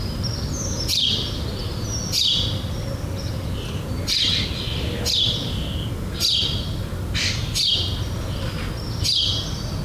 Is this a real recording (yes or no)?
yes